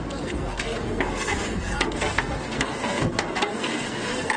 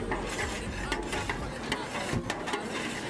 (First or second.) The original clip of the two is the second